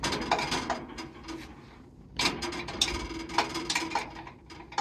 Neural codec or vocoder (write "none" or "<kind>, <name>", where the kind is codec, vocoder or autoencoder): none